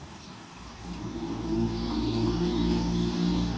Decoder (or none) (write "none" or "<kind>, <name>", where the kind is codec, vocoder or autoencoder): codec, DAC